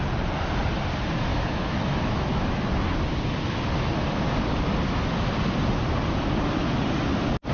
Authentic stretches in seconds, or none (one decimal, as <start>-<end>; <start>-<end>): 0.0-1.3; 2.7-7.5